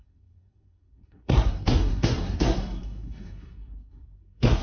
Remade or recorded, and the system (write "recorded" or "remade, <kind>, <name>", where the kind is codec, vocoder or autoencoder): remade, codec, SNAC